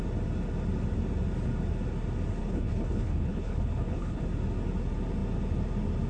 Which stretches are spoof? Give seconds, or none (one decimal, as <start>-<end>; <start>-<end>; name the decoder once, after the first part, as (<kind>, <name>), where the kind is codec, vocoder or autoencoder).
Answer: 2.4-4.2 (codec, HILCodec)